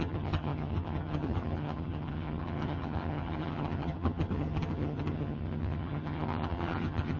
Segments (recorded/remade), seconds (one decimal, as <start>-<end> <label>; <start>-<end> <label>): 0.0-7.2 remade